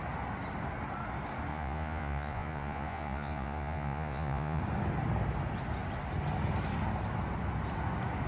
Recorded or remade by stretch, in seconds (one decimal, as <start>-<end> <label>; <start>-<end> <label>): 0.0-1.5 recorded; 1.5-4.6 remade; 4.6-8.3 recorded